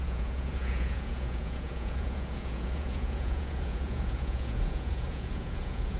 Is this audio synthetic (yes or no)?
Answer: yes